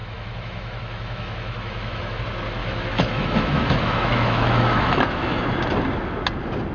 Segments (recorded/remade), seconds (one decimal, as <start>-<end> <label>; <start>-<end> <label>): 0.0-2.2 remade; 2.2-2.6 recorded; 2.6-5.4 remade; 5.4-6.7 recorded